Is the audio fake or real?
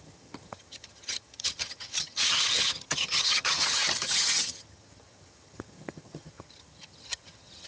fake